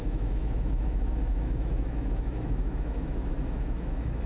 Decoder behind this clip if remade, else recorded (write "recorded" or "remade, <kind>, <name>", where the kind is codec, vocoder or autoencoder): remade, autoencoder, DAC-VAE